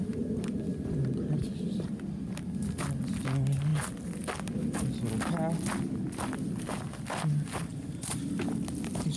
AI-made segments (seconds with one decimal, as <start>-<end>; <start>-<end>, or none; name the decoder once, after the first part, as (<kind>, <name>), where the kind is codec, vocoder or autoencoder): 7.7-8.2 (vocoder, BigVGAN v2)